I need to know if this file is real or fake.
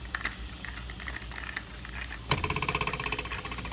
real